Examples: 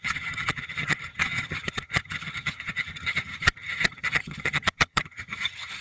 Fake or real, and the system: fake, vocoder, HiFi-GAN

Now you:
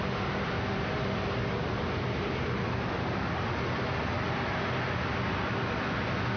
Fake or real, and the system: real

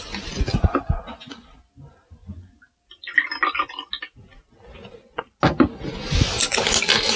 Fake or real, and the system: real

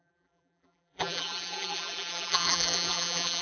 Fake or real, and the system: fake, vocoder, BigVGAN v2